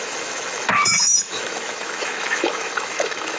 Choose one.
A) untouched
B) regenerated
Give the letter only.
B